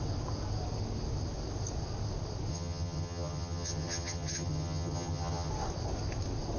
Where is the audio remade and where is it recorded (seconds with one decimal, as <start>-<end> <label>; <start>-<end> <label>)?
0.0-2.5 recorded; 2.5-5.5 remade; 5.5-6.6 recorded